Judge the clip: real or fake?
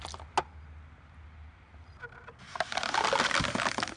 real